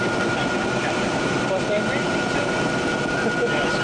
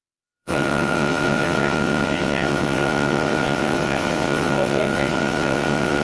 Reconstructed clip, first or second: second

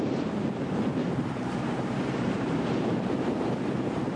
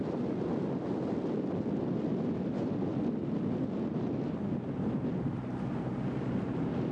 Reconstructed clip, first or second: first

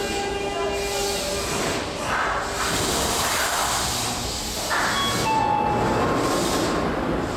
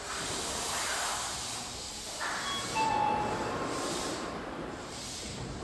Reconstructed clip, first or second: second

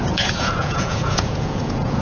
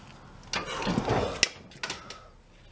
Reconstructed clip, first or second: first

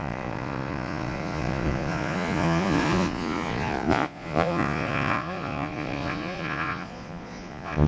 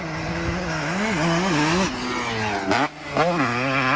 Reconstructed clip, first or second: first